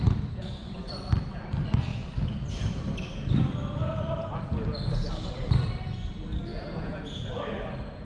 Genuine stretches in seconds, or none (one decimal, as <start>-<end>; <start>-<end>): 0.0-6.5; 7.4-8.0